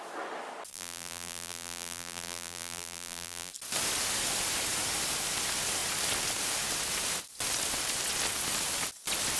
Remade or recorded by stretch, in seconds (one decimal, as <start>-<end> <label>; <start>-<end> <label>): 0.0-0.7 recorded; 0.7-3.5 remade; 3.5-9.4 recorded